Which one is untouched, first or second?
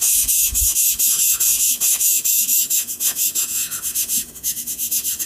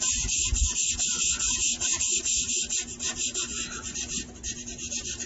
second